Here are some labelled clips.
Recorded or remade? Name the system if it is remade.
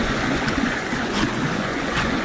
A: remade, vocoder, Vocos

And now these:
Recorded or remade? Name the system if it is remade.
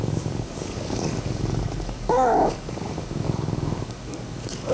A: remade, codec, DAC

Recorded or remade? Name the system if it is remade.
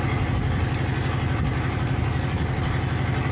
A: recorded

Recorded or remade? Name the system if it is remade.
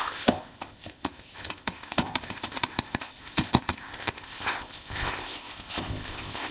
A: remade, codec, ZipCodec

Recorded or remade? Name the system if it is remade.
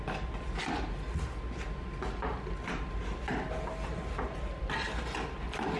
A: recorded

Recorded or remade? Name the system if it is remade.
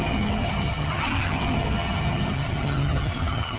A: remade, vocoder, HiFi-GAN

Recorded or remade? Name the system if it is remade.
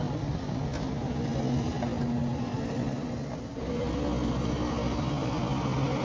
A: recorded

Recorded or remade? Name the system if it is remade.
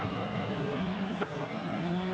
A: remade, codec, SNAC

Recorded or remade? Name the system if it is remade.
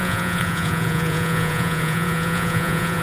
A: remade, vocoder, Vocos